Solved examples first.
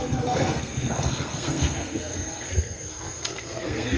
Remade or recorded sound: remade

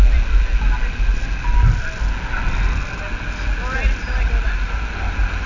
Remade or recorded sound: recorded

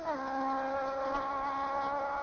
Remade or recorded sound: recorded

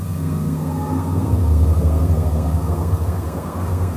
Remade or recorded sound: remade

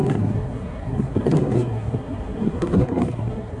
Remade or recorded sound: remade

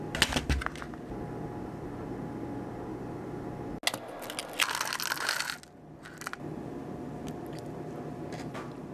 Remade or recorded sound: recorded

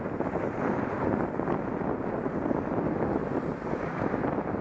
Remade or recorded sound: recorded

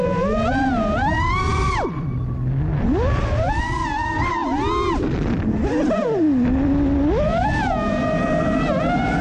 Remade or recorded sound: recorded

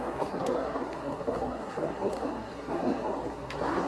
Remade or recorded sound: remade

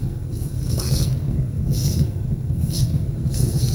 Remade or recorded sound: remade